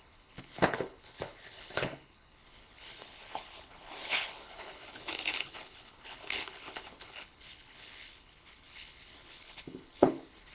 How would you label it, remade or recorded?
remade